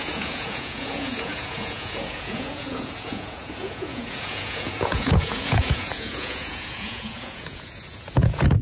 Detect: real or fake fake